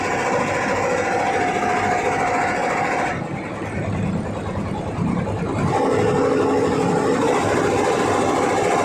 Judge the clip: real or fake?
real